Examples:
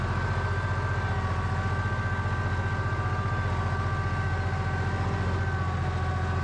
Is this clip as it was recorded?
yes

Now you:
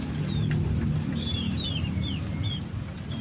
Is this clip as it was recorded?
yes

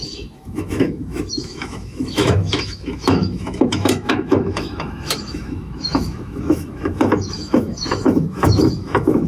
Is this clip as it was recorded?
no